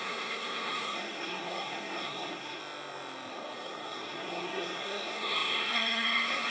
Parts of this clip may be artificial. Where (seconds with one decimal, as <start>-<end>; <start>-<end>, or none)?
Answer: 0.0-2.6; 3.3-6.5